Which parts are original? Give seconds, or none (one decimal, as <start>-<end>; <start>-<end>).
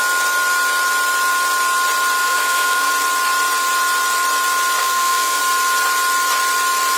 0.0-2.2; 2.9-4.8; 5.4-7.0